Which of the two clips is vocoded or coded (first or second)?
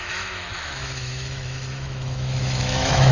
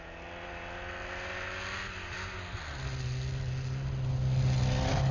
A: first